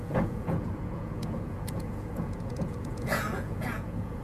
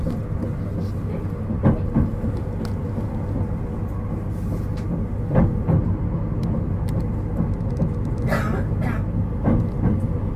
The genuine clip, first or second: second